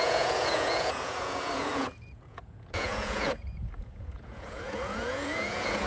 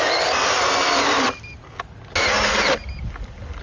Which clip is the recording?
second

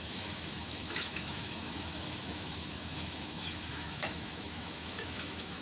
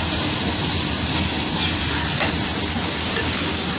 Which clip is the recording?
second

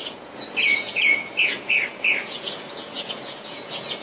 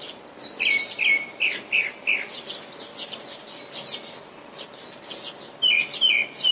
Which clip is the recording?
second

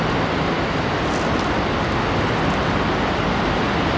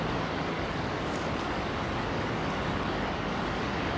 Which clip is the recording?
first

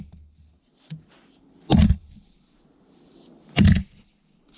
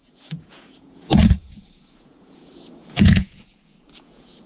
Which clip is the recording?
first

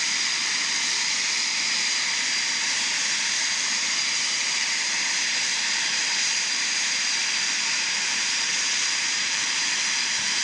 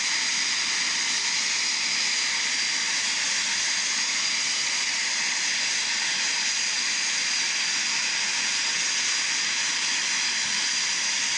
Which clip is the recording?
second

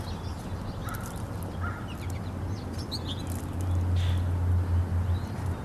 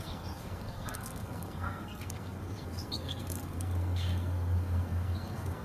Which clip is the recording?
first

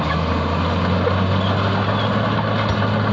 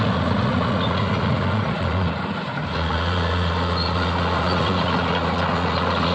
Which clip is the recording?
first